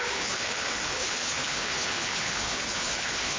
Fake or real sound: fake